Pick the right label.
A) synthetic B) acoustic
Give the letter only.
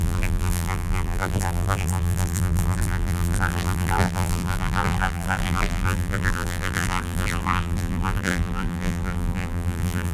A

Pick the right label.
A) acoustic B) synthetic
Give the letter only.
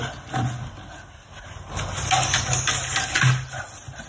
A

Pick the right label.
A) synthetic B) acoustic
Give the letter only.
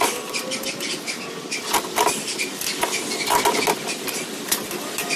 B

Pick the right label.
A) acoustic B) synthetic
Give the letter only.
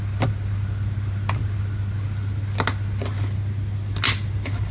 A